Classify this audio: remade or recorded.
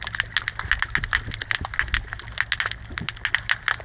recorded